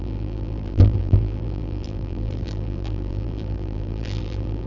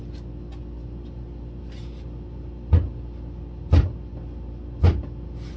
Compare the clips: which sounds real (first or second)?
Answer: second